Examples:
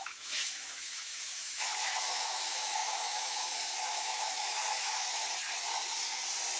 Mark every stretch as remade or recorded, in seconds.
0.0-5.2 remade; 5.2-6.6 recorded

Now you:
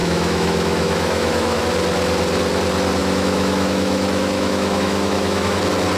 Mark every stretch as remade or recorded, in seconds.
0.0-1.6 remade; 1.6-3.0 recorded; 3.0-5.6 remade; 5.6-6.0 recorded